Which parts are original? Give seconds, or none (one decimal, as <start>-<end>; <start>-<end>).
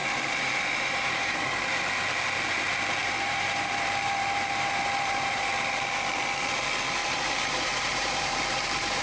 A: 1.6-3.0; 5.5-7.0